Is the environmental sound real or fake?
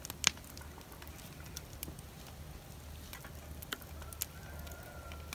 real